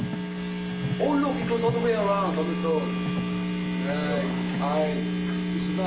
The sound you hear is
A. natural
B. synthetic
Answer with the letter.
A